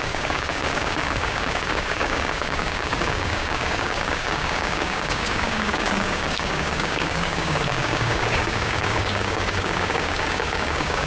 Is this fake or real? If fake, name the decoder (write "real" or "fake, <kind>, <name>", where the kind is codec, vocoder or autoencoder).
fake, codec, DAC